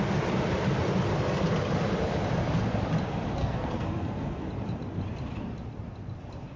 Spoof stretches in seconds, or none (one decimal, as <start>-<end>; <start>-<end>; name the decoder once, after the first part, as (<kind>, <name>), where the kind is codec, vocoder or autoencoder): 3.4-4.5 (codec, SNAC)